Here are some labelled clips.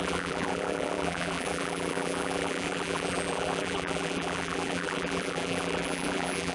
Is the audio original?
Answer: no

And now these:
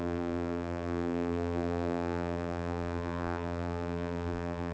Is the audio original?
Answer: no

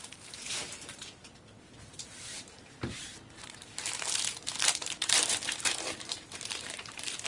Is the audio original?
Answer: no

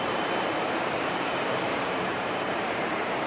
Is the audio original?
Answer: no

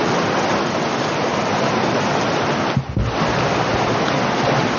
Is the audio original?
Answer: yes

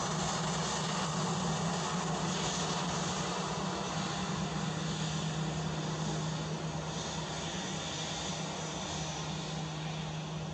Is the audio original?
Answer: yes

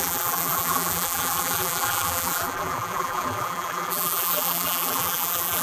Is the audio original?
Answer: no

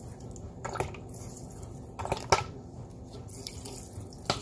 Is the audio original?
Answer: yes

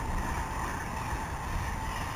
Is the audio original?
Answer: yes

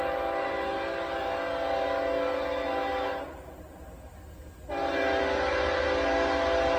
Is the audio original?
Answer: yes